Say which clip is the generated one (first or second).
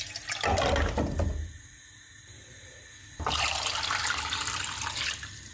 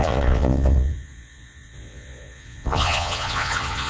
second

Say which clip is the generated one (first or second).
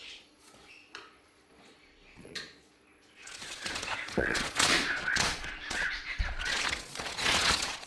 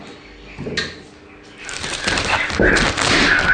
first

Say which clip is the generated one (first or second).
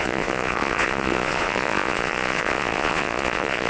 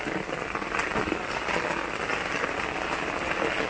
first